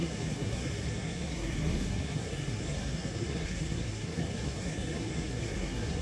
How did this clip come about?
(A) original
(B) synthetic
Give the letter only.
B